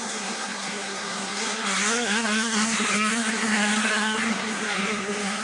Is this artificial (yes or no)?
yes